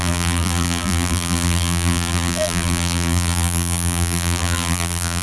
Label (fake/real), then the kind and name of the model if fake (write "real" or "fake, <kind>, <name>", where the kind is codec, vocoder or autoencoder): fake, vocoder, BigVGAN v2